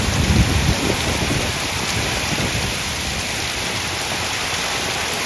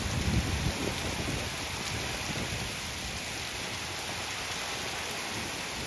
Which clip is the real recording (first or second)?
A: second